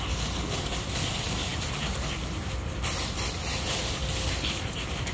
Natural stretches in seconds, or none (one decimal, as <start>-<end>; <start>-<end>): 0.0-5.1